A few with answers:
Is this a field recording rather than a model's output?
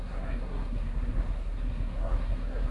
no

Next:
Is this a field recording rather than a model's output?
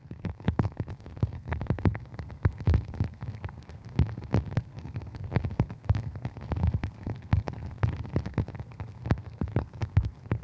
no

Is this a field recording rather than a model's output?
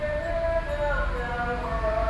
yes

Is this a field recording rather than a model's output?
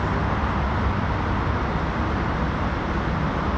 yes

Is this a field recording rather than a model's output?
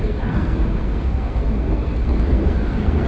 no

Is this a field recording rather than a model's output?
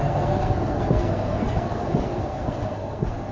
no